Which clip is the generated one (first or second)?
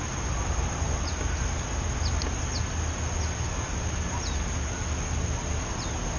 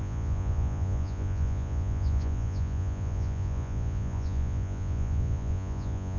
second